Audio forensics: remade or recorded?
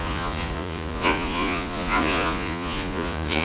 remade